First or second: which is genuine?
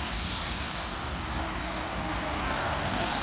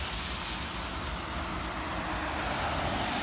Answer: second